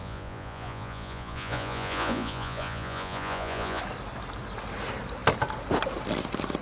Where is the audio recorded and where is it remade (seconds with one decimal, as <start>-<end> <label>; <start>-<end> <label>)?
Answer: 0.0-3.8 remade; 3.8-6.6 recorded

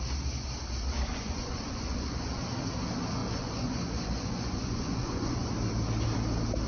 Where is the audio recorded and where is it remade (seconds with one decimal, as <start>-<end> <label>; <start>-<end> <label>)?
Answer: 0.0-1.1 recorded; 1.1-2.4 remade; 2.4-3.2 recorded; 3.2-5.5 remade; 5.5-6.7 recorded

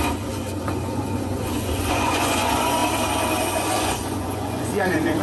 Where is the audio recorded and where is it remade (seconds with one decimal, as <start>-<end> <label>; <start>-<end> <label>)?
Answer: 0.0-2.8 remade; 2.8-3.5 recorded; 3.5-5.2 remade

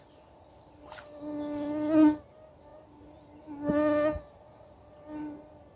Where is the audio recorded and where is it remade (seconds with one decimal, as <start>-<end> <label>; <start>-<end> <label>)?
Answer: 0.0-5.8 recorded

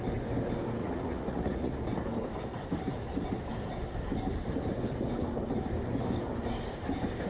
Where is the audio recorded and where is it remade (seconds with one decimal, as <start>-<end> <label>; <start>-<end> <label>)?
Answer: 0.0-0.8 recorded; 0.8-1.8 remade; 1.8-7.3 recorded